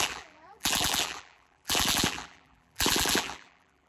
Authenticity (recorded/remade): remade